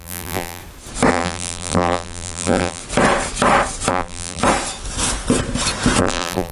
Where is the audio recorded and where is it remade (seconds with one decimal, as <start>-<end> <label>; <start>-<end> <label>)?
0.0-0.6 remade; 0.6-1.1 recorded; 1.1-2.8 remade; 2.8-3.9 recorded; 3.9-4.4 remade; 4.4-6.0 recorded; 6.0-6.5 remade